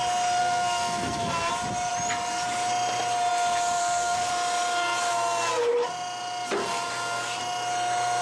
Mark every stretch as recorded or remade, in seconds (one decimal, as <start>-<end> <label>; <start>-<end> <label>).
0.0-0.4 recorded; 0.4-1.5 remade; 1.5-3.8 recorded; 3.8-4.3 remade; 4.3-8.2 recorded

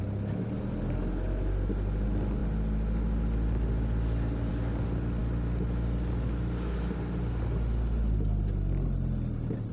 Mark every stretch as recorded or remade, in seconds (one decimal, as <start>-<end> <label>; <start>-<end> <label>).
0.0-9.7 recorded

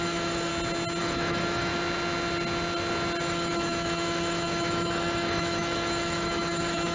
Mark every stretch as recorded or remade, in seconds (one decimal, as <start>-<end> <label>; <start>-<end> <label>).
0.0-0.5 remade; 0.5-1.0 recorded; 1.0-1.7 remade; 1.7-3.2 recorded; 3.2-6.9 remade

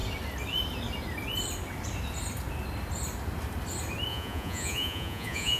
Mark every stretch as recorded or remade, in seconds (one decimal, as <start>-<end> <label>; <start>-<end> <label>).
0.0-4.1 recorded; 4.1-5.6 remade

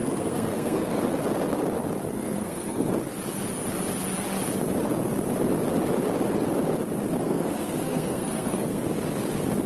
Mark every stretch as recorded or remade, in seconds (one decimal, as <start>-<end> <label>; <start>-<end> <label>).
0.0-1.0 remade; 1.0-2.1 recorded; 2.1-2.9 remade; 2.9-7.2 recorded; 7.2-8.8 remade; 8.8-9.7 recorded

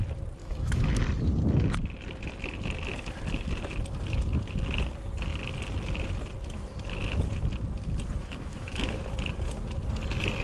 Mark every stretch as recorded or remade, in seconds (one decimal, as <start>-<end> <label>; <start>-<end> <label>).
0.0-0.4 recorded; 0.4-1.0 remade; 1.0-8.2 recorded; 8.2-9.0 remade; 9.0-10.4 recorded